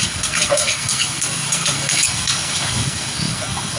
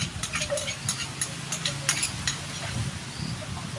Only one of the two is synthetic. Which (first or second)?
first